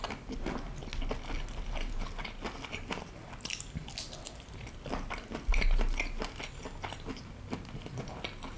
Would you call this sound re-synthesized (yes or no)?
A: no